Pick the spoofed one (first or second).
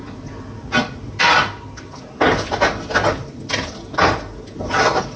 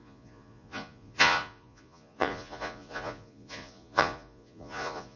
second